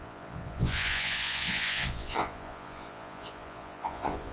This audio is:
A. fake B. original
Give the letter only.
A